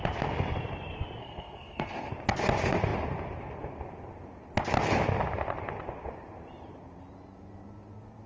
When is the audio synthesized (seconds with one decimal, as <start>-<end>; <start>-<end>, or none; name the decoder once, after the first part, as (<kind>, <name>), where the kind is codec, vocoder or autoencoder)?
1.2-2.1 (codec, SNAC)